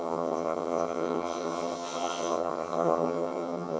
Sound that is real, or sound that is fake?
fake